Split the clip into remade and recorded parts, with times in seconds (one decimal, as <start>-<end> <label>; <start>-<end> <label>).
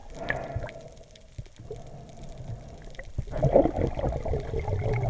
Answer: 0.0-5.1 recorded